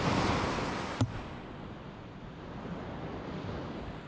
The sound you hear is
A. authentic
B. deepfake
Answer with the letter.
A